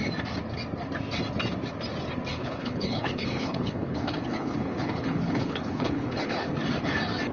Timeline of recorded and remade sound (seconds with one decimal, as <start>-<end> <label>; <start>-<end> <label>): 0.0-2.3 recorded; 2.3-6.5 remade; 6.5-7.3 recorded